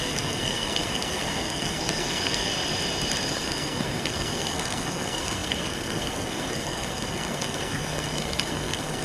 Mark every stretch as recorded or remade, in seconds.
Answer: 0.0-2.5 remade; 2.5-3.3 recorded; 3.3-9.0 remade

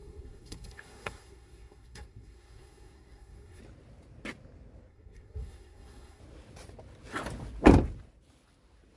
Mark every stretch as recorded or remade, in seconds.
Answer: 0.0-3.6 remade; 3.6-4.9 recorded; 4.9-6.2 remade; 6.2-9.0 recorded